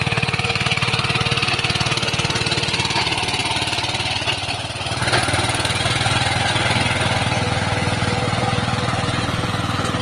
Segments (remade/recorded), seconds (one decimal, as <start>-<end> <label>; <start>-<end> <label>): 0.0-10.0 remade